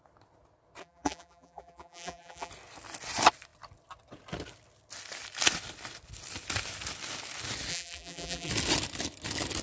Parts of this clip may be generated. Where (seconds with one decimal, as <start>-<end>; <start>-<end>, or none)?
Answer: 0.8-2.5; 7.7-8.5